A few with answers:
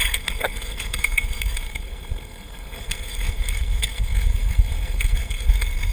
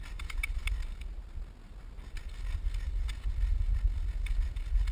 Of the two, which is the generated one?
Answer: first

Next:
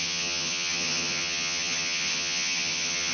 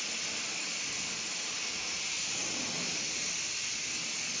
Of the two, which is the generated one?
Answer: first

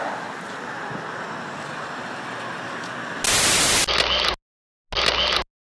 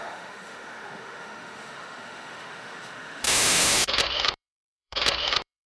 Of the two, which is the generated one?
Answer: second